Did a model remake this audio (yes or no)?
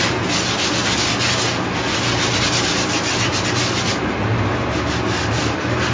no